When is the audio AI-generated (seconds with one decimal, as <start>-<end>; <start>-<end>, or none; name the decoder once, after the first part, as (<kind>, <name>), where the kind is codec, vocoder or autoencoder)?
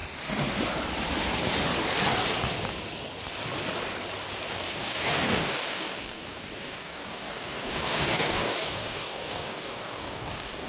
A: 4.5-10.7 (codec, DAC)